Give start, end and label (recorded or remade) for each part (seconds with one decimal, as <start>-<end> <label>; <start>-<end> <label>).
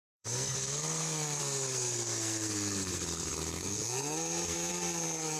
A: 0.0-5.4 remade